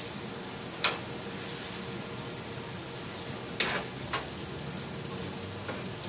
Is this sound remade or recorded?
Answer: recorded